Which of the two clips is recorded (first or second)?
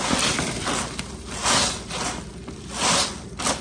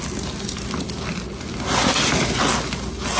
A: second